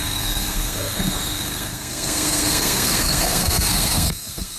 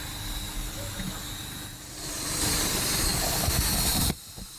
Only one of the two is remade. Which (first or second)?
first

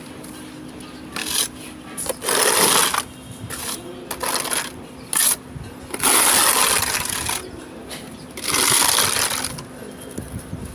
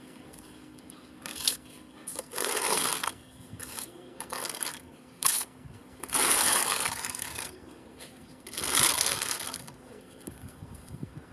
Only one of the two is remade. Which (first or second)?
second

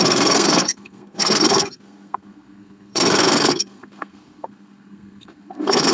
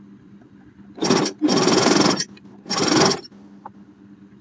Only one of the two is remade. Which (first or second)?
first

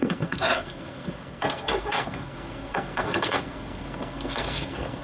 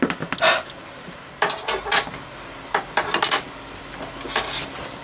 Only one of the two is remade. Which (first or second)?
first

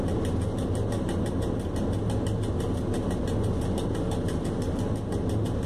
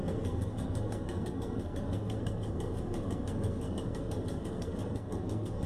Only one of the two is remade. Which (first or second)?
second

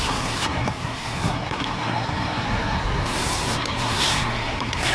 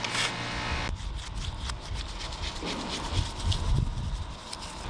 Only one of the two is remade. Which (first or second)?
first